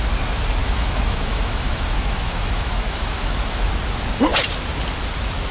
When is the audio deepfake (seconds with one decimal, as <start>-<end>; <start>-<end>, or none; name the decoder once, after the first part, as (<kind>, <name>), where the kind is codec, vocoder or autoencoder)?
0.6-3.7 (autoencoder, DAC-VAE)